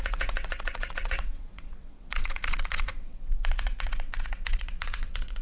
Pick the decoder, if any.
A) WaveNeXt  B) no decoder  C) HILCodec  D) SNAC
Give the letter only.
A